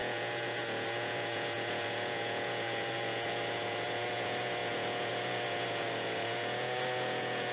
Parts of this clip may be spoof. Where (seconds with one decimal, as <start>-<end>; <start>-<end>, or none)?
0.0-7.5